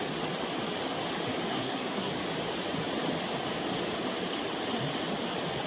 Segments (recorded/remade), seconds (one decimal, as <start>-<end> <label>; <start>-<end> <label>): 0.0-1.5 recorded; 1.5-2.1 remade; 2.1-5.7 recorded